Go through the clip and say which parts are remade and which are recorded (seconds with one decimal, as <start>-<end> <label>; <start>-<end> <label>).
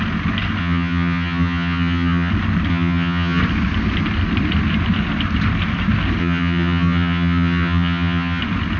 0.0-0.6 recorded; 0.6-2.3 remade; 2.3-2.7 recorded; 2.7-3.4 remade; 3.4-6.2 recorded; 6.2-8.4 remade; 8.4-8.8 recorded